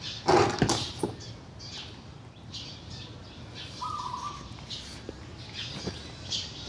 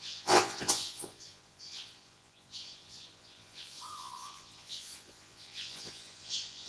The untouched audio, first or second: first